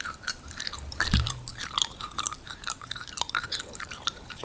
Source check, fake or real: fake